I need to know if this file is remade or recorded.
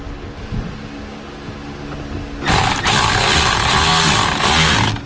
recorded